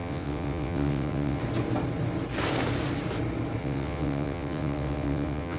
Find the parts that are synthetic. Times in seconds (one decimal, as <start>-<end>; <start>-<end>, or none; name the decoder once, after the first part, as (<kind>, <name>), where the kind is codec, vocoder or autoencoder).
0.0-1.4 (vocoder, WaveNeXt); 3.6-5.6